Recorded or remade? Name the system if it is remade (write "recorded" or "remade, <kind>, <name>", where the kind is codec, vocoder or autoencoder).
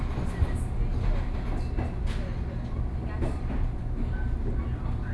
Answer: recorded